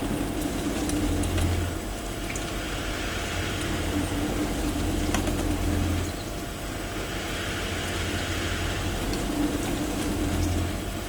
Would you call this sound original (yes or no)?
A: yes